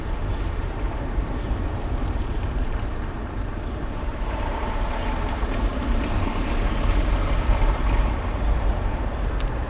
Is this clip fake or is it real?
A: fake